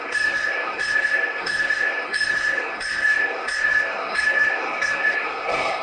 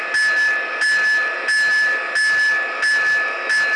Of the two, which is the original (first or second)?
second